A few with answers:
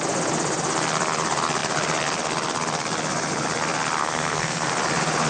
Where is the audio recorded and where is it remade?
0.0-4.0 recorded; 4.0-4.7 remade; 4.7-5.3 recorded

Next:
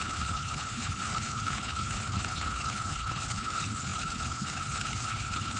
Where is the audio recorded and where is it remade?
0.0-5.6 remade

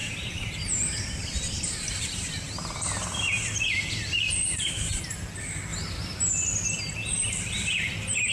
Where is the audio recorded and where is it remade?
0.0-5.0 remade; 5.0-5.7 recorded; 5.7-6.3 remade; 6.3-8.3 recorded

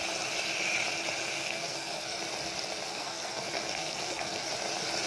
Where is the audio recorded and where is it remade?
0.0-1.4 recorded; 1.4-2.2 remade; 2.2-2.9 recorded; 2.9-4.5 remade; 4.5-5.1 recorded